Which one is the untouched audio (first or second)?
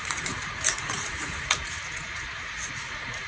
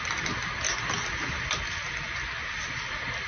second